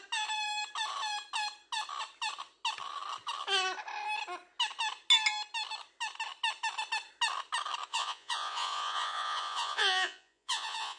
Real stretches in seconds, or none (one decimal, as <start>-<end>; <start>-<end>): 0.0-7.9